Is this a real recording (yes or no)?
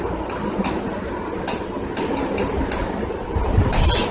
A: yes